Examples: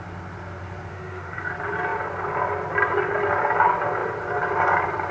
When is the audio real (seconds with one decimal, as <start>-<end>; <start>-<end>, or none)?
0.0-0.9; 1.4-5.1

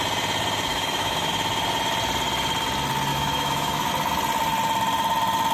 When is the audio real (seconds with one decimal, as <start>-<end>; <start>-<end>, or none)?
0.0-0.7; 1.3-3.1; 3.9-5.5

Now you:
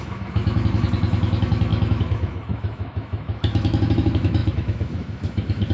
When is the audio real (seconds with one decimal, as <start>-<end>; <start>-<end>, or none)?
none

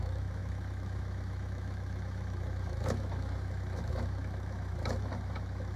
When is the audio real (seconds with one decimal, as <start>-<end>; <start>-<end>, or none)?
none